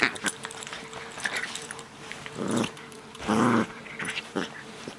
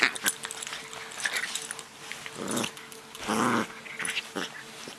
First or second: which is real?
second